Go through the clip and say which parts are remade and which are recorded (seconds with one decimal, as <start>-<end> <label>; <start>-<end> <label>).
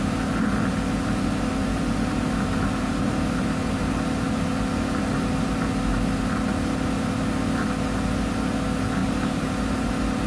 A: 0.0-1.6 recorded; 1.6-3.9 remade; 3.9-9.0 recorded; 9.0-9.9 remade; 9.9-10.3 recorded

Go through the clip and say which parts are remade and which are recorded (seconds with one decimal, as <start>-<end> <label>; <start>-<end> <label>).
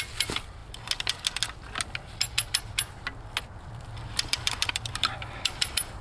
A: 0.0-0.6 remade; 0.6-3.4 recorded; 3.4-6.0 remade